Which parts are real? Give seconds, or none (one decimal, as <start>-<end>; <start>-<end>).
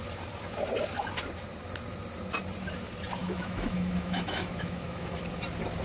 0.0-3.2; 5.2-5.8